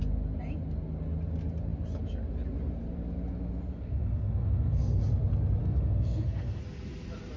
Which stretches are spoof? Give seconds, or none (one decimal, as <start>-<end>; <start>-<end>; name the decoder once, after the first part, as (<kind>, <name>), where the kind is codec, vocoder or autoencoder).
3.7-5.0 (codec, SNAC); 5.6-6.6